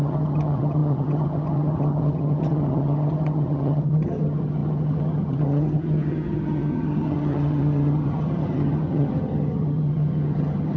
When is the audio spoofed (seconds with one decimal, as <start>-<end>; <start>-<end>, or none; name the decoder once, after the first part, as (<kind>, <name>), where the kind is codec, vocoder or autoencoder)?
0.0-10.8 (vocoder, HiFi-GAN)